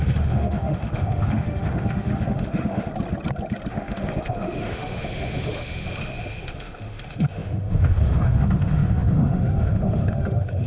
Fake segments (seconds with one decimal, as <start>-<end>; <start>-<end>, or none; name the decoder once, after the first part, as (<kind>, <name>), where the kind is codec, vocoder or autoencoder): 0.0-2.9 (autoencoder, DAC-VAE); 3.7-10.7